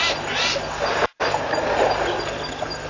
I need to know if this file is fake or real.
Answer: real